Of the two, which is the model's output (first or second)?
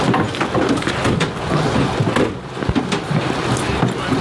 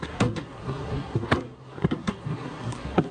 second